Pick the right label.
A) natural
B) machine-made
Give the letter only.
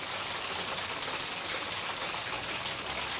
A